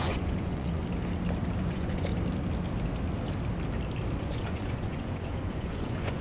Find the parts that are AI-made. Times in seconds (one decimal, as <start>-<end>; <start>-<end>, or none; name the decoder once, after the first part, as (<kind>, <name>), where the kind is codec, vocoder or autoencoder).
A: 0.0-0.8 (vocoder, Vocos); 1.6-2.1; 4.2-6.2